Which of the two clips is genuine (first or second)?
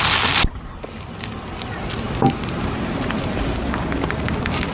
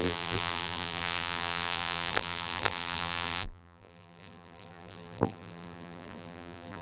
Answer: first